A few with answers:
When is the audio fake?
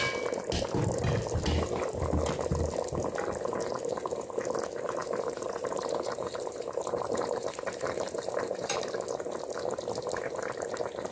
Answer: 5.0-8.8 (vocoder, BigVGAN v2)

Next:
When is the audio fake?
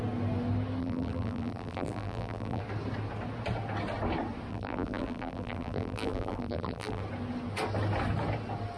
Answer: 0.8-2.6 (vocoder, BigVGAN v2); 4.5-7.0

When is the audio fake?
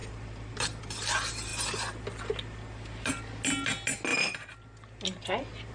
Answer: 0.0-0.8 (vocoder, BigVGAN v2); 1.5-3.2; 4.1-5.7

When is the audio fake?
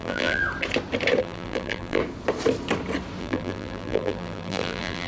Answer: 0.0-0.4 (vocoder, BigVGAN v2); 1.2-2.0; 3.2-5.1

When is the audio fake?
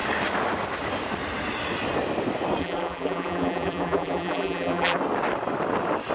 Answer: 2.6-5.0 (vocoder, BigVGAN v2)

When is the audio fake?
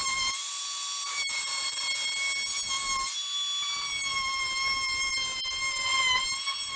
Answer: 0.0-0.6 (vocoder, BigVGAN v2); 1.0-1.8; 4.1-5.1